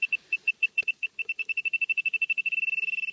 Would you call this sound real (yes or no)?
no